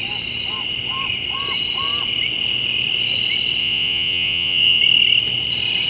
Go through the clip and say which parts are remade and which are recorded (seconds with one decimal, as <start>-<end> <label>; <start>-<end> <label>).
0.0-3.6 recorded; 3.6-4.8 remade; 4.8-5.9 recorded